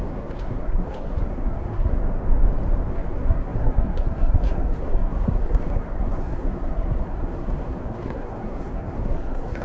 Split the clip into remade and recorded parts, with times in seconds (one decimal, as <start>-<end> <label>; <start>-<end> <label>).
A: 0.0-2.0 remade; 2.0-2.9 recorded; 2.9-9.6 remade